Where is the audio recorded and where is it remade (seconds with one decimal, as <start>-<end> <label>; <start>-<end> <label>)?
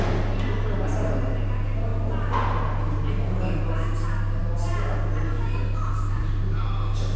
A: 0.0-7.2 recorded